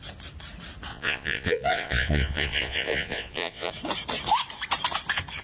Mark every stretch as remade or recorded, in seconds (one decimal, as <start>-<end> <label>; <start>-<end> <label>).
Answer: 0.0-0.9 recorded; 0.9-3.7 remade; 3.7-5.4 recorded